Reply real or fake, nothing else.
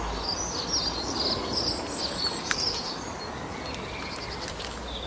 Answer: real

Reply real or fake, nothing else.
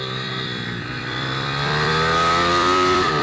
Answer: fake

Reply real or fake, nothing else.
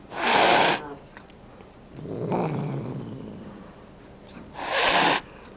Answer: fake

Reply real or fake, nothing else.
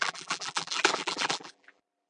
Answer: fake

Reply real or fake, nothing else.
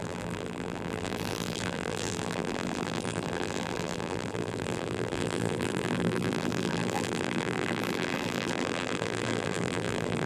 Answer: fake